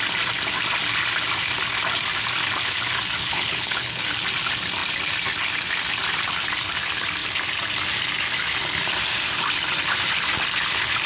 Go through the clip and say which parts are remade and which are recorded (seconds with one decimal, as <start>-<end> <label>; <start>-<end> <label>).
0.0-3.2 recorded; 3.2-4.0 remade; 4.0-11.1 recorded